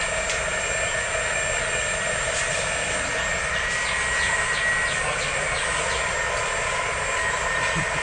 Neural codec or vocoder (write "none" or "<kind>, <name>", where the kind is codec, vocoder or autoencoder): none